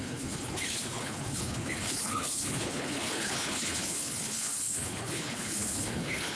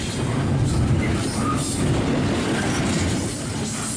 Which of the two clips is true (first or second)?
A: second